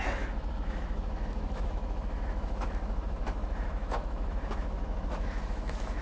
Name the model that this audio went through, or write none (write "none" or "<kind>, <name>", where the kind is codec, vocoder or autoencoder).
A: autoencoder, DAC-VAE